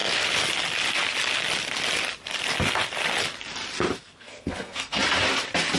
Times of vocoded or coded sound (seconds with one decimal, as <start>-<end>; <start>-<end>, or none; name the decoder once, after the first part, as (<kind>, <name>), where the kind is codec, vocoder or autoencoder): 4.0-5.0 (codec, SNAC)